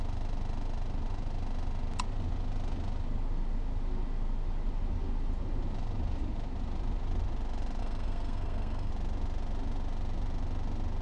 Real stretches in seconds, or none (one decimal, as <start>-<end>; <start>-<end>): 0.0-7.8; 8.9-11.0